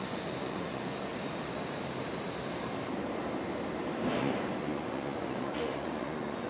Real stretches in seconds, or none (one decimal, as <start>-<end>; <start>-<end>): 1.1-4.2